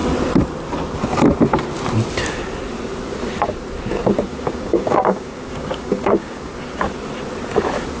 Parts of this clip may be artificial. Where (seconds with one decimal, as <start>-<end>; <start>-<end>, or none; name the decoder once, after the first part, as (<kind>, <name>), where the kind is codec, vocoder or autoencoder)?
4.3-6.5 (codec, DAC)